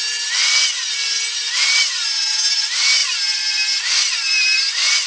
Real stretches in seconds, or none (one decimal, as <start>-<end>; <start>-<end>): 0.0-5.1